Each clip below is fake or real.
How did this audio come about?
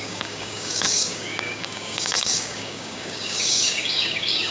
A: fake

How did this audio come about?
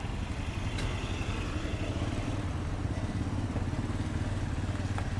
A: real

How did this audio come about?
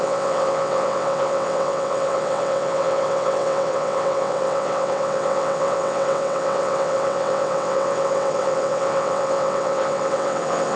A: fake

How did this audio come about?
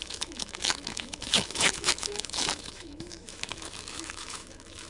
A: fake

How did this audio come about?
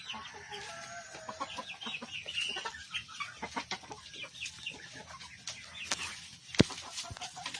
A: real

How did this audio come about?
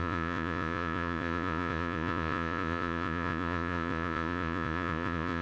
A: fake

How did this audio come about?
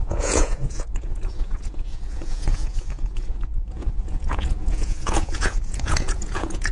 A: fake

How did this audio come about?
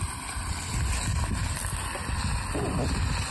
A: real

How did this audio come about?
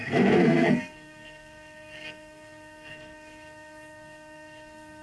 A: fake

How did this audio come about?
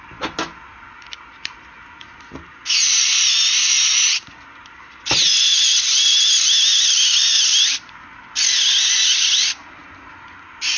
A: real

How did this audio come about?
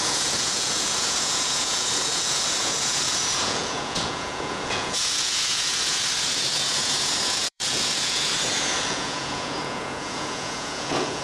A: fake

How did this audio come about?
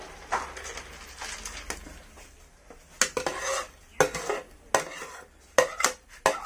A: real